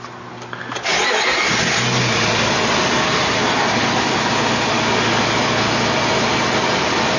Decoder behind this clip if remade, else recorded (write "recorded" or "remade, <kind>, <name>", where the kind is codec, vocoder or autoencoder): recorded